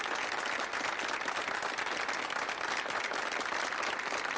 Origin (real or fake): real